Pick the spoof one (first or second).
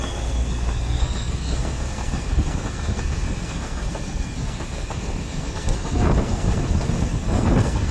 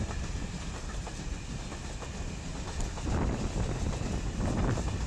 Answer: first